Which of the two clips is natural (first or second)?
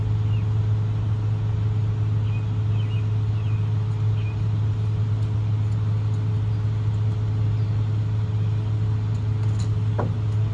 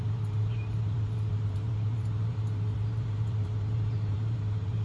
first